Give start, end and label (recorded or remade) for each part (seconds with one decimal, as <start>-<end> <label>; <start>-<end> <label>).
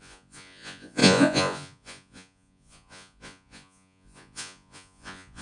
0.0-5.4 remade